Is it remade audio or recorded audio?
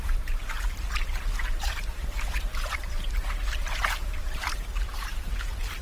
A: remade